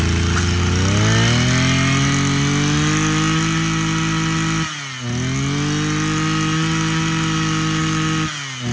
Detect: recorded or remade recorded